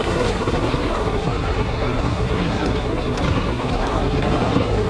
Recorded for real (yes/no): no